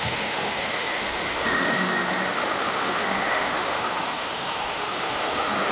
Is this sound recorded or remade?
remade